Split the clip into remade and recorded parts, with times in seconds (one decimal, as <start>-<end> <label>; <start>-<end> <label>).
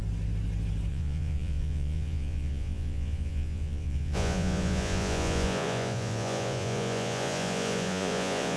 0.0-0.9 recorded; 0.9-8.6 remade